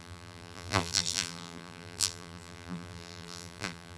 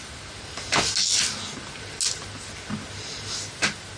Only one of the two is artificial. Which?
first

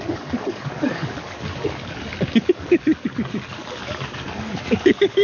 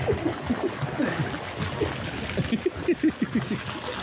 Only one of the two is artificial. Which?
first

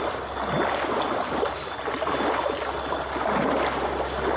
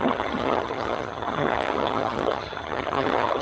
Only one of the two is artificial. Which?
second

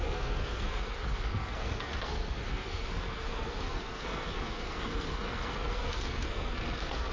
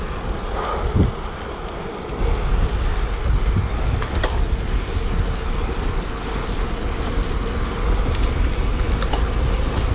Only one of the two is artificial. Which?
first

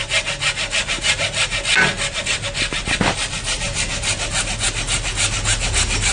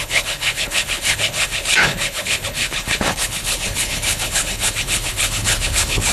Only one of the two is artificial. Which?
second